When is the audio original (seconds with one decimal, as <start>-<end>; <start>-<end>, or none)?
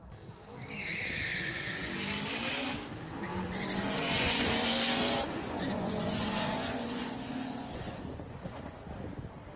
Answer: 0.0-1.3; 1.9-3.8; 8.9-9.6